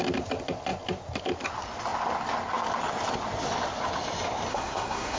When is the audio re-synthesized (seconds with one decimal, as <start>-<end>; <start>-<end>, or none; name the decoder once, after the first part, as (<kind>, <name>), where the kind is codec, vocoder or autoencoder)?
4.5-5.2 (codec, SNAC)